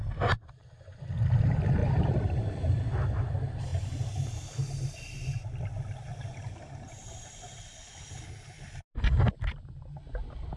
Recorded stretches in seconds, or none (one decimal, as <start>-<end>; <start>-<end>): 0.7-1.8; 2.8-6.1; 8.7-10.6